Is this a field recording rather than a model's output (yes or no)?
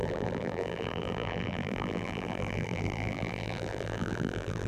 no